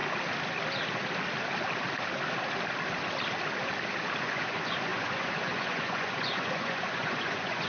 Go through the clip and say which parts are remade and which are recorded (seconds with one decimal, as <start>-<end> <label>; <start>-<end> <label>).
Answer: 0.0-4.2 recorded; 4.2-7.7 remade